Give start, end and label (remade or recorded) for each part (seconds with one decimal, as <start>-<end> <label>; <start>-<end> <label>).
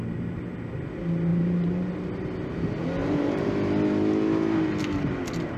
0.0-1.3 recorded; 1.3-1.9 remade; 1.9-3.0 recorded; 3.0-3.5 remade; 3.5-5.6 recorded